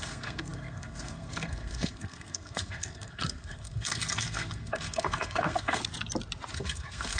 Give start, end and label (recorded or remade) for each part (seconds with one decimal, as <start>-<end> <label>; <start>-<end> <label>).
0.0-5.8 remade; 5.8-6.5 recorded; 6.5-7.2 remade